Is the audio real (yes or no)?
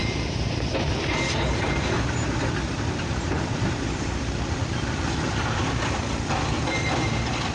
no